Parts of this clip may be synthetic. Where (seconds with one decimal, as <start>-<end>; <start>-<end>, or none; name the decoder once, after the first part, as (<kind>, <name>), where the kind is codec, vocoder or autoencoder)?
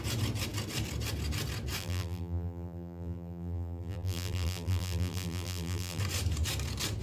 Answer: 1.8-6.0 (vocoder, BigVGAN v2)